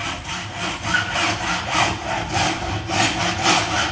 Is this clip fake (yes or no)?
no